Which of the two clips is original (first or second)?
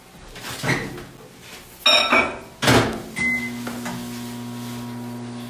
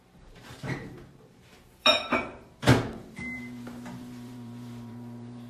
first